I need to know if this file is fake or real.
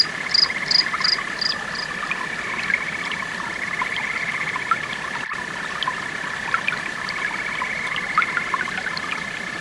real